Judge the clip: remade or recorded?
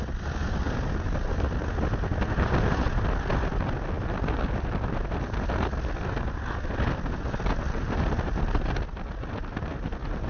recorded